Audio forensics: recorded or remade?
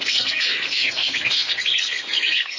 remade